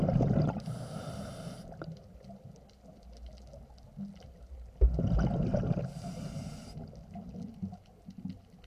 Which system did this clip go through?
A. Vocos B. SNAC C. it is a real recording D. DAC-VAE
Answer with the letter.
C